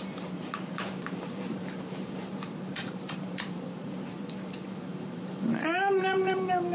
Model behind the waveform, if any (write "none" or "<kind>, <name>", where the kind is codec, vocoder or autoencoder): vocoder, BigVGAN v2